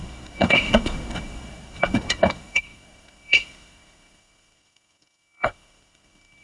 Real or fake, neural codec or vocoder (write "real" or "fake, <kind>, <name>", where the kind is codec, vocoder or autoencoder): fake, codec, SNAC